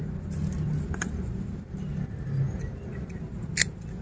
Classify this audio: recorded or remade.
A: recorded